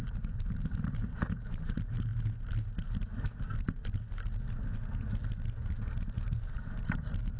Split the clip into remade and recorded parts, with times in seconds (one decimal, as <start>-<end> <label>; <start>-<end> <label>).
0.0-2.1 remade; 2.1-6.5 recorded; 6.5-7.4 remade